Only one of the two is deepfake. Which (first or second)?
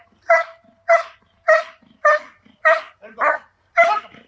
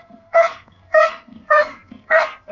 second